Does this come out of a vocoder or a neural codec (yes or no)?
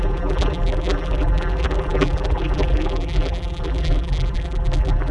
yes